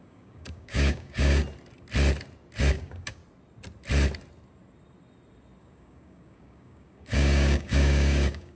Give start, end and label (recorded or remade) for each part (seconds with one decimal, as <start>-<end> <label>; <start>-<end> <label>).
0.0-1.4 remade; 1.4-2.7 recorded; 2.7-3.2 remade; 3.2-5.6 recorded; 5.6-8.6 remade